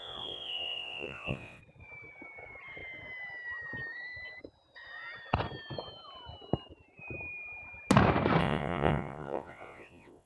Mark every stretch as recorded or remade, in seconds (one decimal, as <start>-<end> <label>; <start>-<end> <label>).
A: 0.0-1.6 remade; 1.6-8.4 recorded; 8.4-10.3 remade